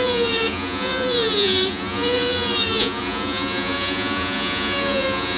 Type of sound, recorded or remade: remade